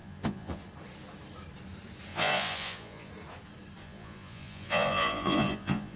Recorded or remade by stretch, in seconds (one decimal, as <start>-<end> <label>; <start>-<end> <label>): 0.0-0.6 remade; 0.6-2.1 recorded; 2.1-3.1 remade; 3.1-3.8 recorded; 3.8-6.0 remade